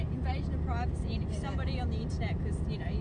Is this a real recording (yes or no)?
yes